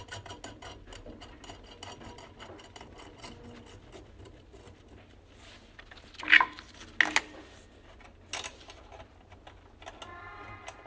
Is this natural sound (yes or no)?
yes